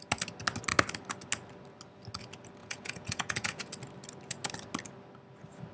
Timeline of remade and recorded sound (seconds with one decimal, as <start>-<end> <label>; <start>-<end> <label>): 0.0-2.6 recorded; 2.6-3.7 remade; 3.7-5.7 recorded

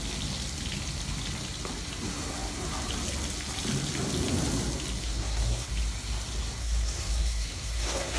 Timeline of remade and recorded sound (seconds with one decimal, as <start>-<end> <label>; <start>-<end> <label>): 0.0-5.0 recorded; 5.0-5.7 remade; 5.7-6.6 recorded; 6.6-8.2 remade

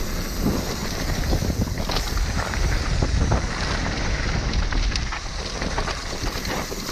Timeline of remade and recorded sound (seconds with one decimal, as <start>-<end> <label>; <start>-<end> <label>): 0.0-6.9 recorded

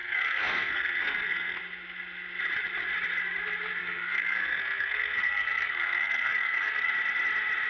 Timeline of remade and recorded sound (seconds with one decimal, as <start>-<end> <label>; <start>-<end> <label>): 0.0-1.6 remade; 1.6-3.8 recorded; 3.8-6.9 remade; 6.9-7.7 recorded

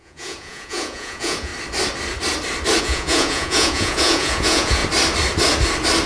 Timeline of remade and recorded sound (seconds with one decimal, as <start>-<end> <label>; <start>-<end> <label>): 0.0-1.5 remade; 1.5-2.8 recorded; 2.8-4.8 remade; 4.8-6.1 recorded

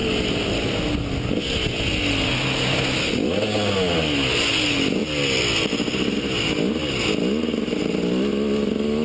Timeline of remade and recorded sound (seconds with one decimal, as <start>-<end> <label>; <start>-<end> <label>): 0.0-9.0 recorded